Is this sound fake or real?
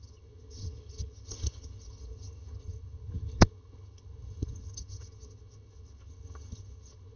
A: fake